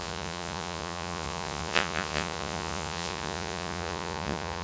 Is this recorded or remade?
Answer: remade